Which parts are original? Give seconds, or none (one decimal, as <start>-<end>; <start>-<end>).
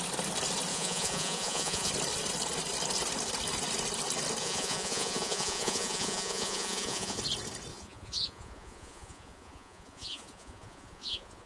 0.0-0.7; 1.9-4.4; 7.2-7.7